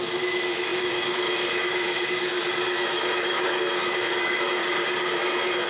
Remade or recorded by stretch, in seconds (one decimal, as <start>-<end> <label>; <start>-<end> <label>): 0.0-4.6 remade; 4.6-5.1 recorded; 5.1-5.7 remade